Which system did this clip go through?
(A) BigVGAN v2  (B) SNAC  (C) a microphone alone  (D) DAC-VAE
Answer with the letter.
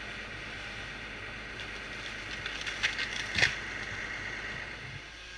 C